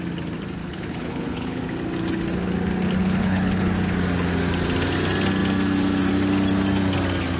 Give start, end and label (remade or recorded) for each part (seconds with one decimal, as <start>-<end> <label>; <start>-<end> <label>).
0.0-0.6 recorded; 0.6-1.6 remade; 1.6-3.0 recorded; 3.0-3.7 remade; 3.7-7.4 recorded